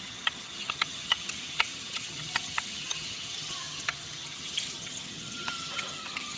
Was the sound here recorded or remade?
remade